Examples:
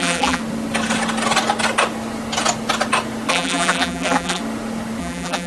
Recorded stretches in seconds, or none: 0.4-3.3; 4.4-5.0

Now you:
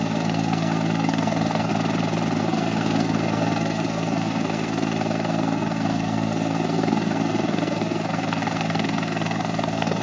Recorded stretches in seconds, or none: 1.7-2.4

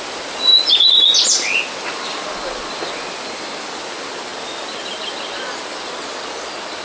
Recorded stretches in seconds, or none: 0.0-6.8

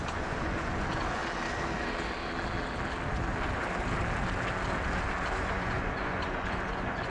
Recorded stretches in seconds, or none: 1.2-5.3

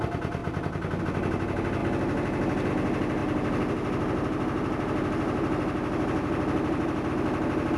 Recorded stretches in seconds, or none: 0.0-7.8

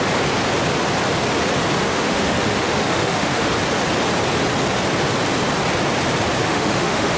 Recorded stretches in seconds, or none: 0.0-1.9; 3.5-6.4